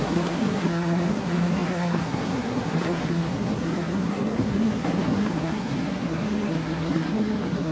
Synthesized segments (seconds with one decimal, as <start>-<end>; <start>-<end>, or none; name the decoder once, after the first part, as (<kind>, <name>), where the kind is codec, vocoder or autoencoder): 0.0-7.7 (codec, SNAC)